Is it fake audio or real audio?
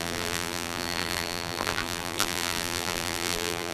fake